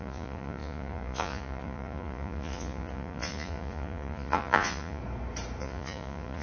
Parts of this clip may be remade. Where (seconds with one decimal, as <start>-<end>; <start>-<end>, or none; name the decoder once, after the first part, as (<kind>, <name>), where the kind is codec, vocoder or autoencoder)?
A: 0.0-5.0 (vocoder, Vocos); 5.6-6.4